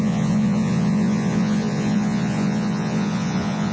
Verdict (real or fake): fake